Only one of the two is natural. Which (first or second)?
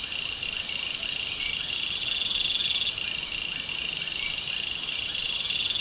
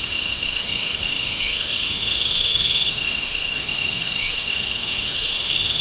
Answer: first